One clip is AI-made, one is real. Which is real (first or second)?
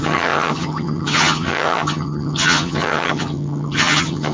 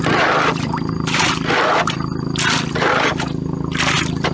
second